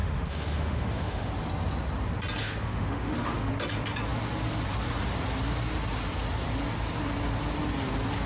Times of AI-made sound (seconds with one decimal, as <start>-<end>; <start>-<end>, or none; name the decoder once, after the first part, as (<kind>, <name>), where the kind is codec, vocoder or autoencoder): 0.0-1.3 (autoencoder, DAC-VAE); 2.4-3.5